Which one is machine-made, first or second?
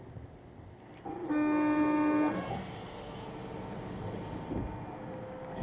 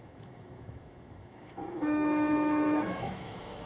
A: second